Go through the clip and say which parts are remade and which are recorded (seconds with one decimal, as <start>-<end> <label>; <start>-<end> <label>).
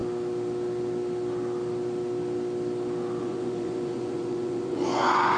0.0-3.2 recorded; 3.2-5.4 remade